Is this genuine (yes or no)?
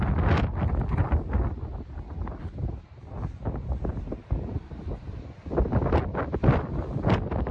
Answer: yes